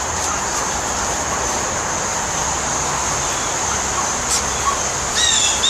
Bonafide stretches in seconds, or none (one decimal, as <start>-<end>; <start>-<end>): 0.0-5.7